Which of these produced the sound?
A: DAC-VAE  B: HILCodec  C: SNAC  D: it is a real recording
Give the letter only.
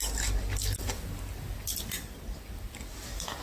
D